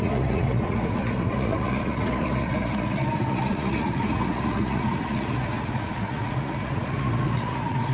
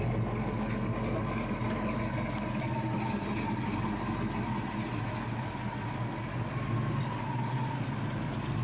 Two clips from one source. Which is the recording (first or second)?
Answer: second